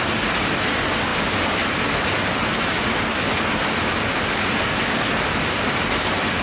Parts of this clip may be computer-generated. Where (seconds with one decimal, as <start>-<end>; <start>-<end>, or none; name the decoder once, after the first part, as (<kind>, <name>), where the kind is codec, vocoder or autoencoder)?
none